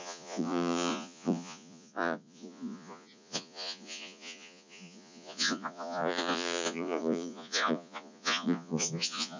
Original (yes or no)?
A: no